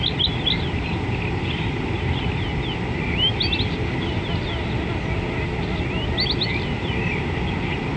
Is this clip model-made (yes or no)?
no